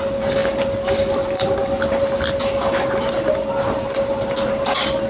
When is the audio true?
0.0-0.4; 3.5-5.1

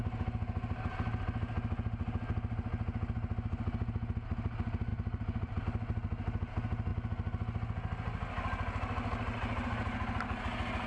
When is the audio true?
0.0-4.9; 5.6-10.9

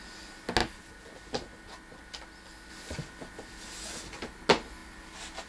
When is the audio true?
0.0-5.5

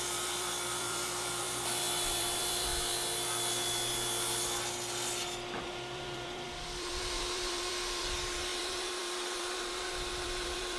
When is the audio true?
2.7-5.6